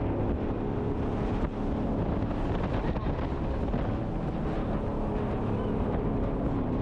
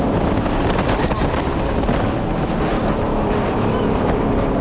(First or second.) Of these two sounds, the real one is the first